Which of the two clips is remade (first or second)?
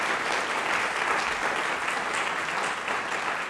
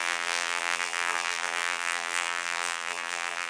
second